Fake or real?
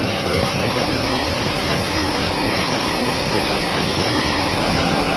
fake